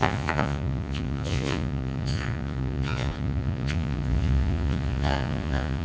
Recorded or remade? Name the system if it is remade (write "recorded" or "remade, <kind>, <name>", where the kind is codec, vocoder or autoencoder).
remade, vocoder, Vocos